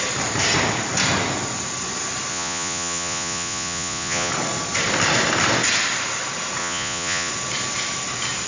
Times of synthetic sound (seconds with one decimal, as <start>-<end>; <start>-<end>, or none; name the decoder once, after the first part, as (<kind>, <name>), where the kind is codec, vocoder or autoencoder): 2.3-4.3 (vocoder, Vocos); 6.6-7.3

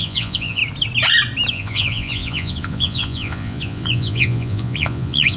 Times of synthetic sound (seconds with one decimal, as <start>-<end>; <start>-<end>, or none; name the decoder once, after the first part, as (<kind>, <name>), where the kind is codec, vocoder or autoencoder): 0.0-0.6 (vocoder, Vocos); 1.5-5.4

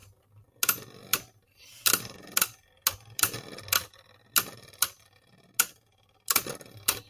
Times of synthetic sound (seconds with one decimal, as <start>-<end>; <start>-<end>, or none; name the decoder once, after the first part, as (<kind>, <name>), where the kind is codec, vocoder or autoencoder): none